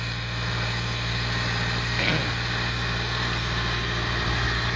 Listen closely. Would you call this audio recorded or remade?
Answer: recorded